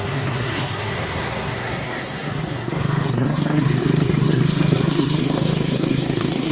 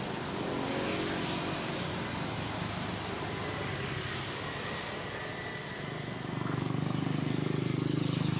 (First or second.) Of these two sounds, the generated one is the first